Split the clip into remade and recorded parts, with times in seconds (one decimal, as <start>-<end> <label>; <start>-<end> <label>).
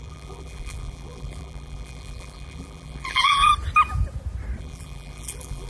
0.0-3.5 remade; 3.5-4.6 recorded; 4.6-5.7 remade